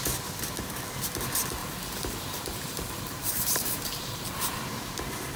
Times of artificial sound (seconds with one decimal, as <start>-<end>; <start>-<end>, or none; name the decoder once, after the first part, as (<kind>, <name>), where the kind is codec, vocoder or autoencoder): 1.6-4.6 (vocoder, BigVGAN v2)